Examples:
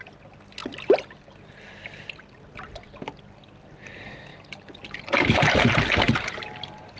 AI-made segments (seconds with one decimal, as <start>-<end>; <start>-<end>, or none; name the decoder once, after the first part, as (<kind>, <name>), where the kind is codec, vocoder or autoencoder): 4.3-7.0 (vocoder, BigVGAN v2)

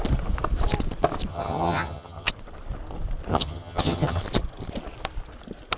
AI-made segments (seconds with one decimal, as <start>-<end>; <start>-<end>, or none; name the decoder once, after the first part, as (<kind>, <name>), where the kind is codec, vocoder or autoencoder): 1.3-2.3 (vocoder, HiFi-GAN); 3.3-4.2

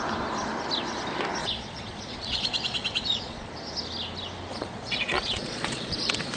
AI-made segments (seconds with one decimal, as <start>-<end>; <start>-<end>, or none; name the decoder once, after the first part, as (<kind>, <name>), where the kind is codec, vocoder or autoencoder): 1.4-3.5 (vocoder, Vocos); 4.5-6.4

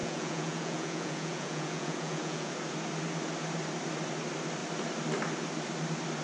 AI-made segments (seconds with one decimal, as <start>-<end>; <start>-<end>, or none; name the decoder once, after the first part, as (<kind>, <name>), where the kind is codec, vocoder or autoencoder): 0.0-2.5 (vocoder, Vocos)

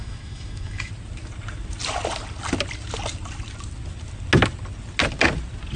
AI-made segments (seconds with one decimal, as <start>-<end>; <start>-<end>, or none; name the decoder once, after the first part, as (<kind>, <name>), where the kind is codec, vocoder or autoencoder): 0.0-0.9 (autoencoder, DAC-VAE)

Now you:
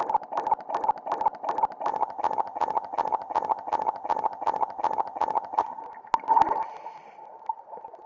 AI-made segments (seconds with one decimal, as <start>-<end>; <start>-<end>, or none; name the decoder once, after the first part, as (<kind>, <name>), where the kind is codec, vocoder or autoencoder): 1.9-5.8 (vocoder, HiFi-GAN)

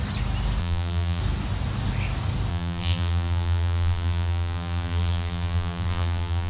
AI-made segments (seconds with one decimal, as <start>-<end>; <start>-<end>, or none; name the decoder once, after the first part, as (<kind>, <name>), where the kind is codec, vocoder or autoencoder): 0.6-1.2 (vocoder, BigVGAN v2); 2.5-6.5

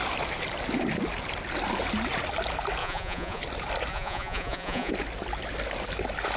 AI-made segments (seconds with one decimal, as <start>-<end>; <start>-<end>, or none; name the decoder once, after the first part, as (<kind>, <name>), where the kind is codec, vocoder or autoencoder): 2.8-3.4 (vocoder, Vocos); 3.9-4.9